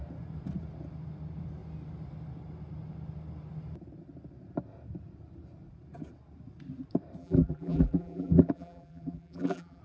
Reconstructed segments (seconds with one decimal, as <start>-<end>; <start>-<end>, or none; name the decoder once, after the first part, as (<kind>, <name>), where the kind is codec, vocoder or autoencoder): 7.2-9.8 (vocoder, BigVGAN v2)